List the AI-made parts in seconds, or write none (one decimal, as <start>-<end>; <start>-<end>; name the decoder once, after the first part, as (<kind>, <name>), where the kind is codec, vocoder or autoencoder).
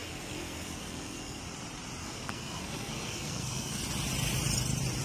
0.0-1.4 (codec, SNAC); 2.0-3.8